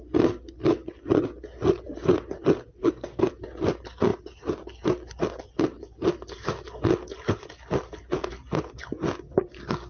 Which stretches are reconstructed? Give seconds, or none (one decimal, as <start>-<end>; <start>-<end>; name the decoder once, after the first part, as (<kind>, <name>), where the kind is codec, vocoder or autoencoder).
2.8-3.3 (codec, SNAC)